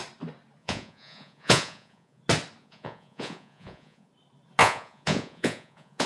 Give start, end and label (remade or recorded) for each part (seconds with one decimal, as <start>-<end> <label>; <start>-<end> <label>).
0.0-0.6 recorded; 0.6-2.2 remade; 2.2-2.6 recorded; 2.6-4.1 remade; 4.1-4.6 recorded; 4.6-6.1 remade